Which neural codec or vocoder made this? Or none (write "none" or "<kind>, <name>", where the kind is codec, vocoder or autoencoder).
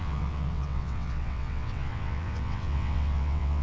vocoder, WaveNeXt